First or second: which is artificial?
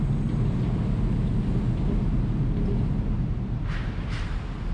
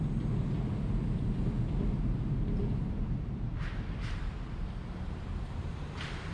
second